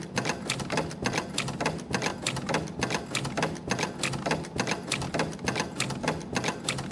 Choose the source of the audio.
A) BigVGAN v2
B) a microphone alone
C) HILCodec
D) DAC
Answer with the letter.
B